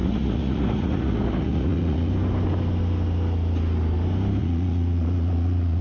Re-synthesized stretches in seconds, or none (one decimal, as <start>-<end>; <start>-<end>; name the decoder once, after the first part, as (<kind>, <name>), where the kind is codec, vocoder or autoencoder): 0.0-2.1 (vocoder, Vocos); 4.4-5.8